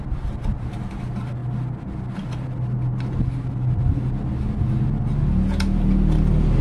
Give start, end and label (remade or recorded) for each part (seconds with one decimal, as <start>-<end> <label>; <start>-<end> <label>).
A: 0.0-6.6 recorded